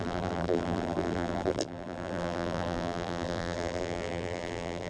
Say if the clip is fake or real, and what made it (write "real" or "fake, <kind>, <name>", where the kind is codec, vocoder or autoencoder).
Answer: fake, vocoder, BigVGAN v2